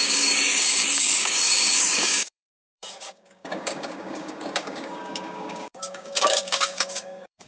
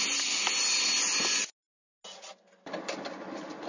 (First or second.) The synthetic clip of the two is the first